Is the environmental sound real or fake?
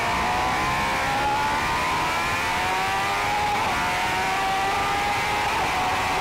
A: fake